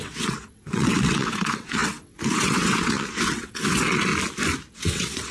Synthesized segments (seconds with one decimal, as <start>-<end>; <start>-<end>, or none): 0.0-4.1; 4.7-5.3